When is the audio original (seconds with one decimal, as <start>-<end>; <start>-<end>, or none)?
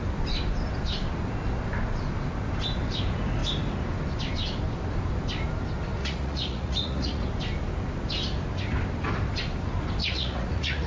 0.0-6.0; 7.2-10.0